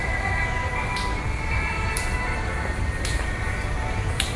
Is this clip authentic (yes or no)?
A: yes